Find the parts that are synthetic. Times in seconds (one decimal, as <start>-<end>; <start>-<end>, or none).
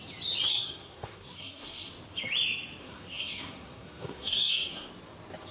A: 0.5-1.9; 2.8-4.9